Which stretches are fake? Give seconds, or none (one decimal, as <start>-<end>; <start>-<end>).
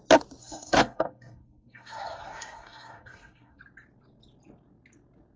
0.4-3.6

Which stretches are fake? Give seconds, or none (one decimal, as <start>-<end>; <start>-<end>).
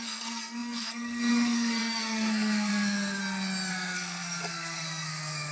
0.0-3.2; 3.7-5.5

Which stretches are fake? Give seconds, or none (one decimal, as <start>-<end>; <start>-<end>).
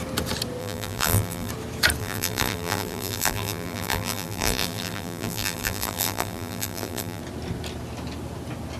0.6-1.5; 2.0-7.2